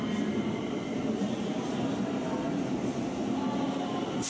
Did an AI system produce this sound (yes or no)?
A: no